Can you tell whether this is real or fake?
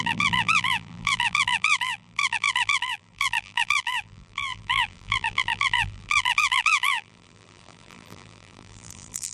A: fake